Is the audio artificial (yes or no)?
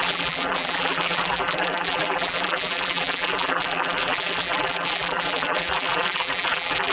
yes